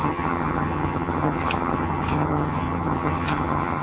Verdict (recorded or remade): remade